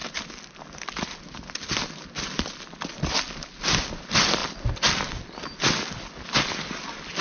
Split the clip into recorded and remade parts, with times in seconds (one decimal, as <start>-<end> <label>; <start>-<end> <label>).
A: 0.0-7.2 recorded